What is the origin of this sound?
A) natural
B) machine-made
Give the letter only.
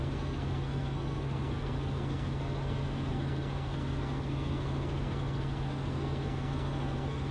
B